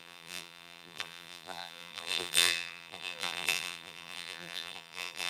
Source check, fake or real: fake